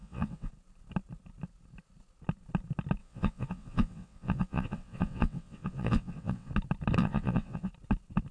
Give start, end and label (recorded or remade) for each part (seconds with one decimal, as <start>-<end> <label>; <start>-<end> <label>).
0.0-0.5 remade; 0.5-3.0 recorded; 3.0-6.5 remade; 6.5-7.0 recorded; 7.0-7.7 remade; 7.7-8.3 recorded